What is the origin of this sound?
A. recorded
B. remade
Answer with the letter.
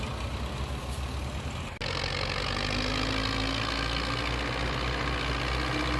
A